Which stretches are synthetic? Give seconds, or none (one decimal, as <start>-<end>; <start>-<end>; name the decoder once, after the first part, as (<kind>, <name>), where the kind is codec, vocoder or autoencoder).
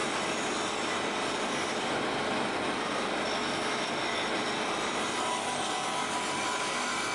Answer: none